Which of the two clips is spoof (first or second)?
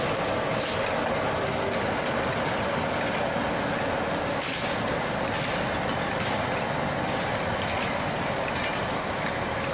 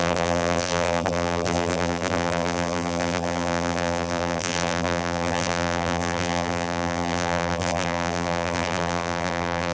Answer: second